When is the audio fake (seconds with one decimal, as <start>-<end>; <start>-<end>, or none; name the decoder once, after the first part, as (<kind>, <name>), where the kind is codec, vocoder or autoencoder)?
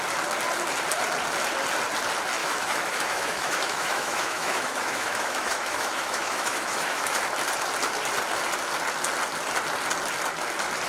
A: 2.4-7.2 (autoencoder, DAC-VAE)